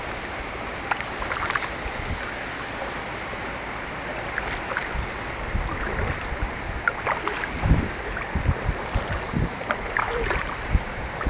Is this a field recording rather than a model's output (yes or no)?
yes